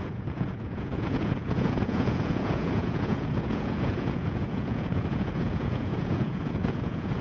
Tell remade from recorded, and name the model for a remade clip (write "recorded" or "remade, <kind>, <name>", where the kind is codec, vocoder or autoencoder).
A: remade, vocoder, Vocos